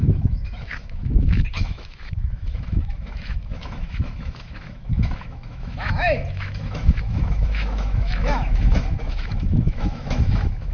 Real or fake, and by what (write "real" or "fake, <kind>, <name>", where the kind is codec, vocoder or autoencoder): fake, autoencoder, DAC-VAE